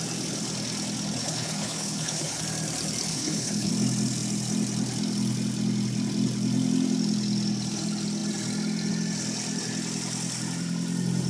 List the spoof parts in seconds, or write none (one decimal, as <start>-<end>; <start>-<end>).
1.2-2.4; 3.1-3.7